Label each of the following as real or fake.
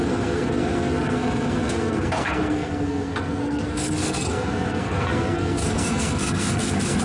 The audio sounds fake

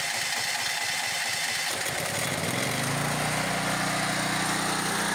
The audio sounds real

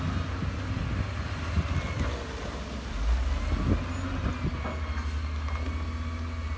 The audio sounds real